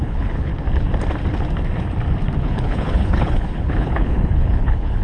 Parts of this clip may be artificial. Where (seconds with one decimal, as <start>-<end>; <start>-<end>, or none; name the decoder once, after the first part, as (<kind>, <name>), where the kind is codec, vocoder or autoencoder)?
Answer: 0.0-0.5 (codec, HILCodec); 2.4-5.0